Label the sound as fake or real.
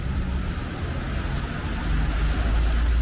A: real